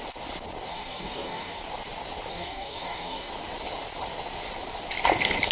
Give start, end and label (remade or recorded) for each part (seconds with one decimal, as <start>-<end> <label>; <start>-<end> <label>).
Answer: 0.0-0.7 recorded; 0.7-1.6 remade; 1.6-2.3 recorded; 2.3-3.3 remade; 3.3-5.5 recorded